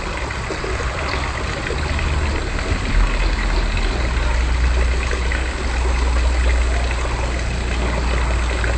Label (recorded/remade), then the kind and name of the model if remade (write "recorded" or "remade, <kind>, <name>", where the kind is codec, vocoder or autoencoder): recorded